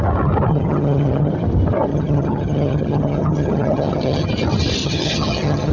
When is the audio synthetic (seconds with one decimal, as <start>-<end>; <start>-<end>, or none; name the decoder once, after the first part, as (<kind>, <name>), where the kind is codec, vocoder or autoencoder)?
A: 0.5-1.3 (vocoder, HiFi-GAN); 1.9-4.3; 4.8-5.7